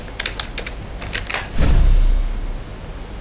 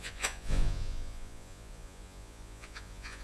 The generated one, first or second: second